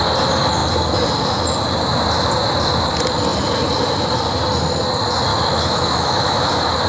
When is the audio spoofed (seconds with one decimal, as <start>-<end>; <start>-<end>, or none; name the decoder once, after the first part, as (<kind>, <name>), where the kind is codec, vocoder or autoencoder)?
5.3-6.5 (autoencoder, DAC-VAE)